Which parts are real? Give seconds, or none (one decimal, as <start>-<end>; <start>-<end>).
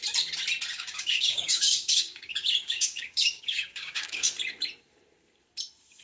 0.0-0.7; 4.3-6.0